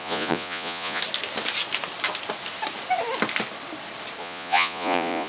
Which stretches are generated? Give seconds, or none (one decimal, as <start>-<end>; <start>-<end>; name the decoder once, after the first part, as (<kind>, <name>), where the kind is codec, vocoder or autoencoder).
0.0-1.0 (vocoder, Vocos); 4.2-5.3